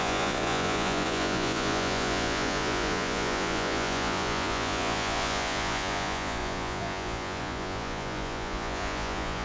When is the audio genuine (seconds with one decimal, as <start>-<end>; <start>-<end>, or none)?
none